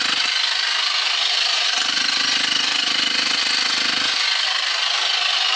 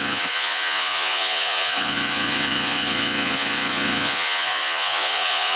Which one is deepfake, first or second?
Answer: second